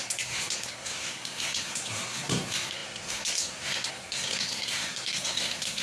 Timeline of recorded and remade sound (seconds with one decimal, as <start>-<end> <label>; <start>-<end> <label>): 0.0-5.8 remade